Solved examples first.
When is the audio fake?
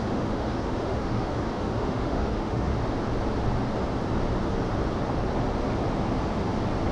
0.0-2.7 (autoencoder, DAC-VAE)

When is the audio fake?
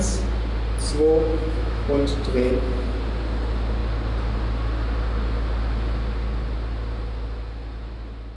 0.9-2.5 (autoencoder, DAC-VAE)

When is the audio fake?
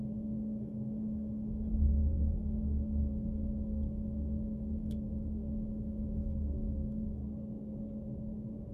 0.0-7.2 (autoencoder, DAC-VAE)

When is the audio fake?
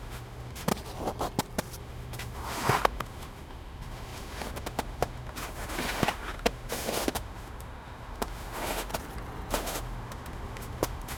0.0-0.7 (autoencoder, DAC-VAE); 1.8-8.9; 9.5-11.2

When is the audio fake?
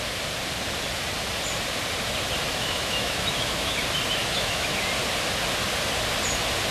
2.5-3.8 (autoencoder, DAC-VAE); 4.2-4.8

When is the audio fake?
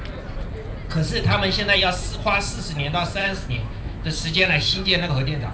3.2-5.1 (autoencoder, DAC-VAE)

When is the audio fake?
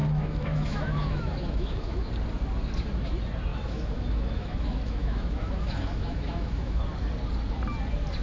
0.0-2.1 (autoencoder, DAC-VAE); 3.5-6.8